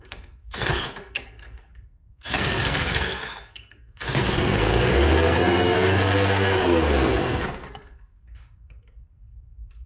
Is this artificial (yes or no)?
yes